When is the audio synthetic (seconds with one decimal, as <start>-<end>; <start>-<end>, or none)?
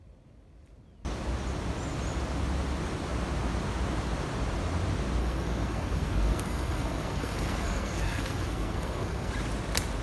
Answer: 5.2-9.3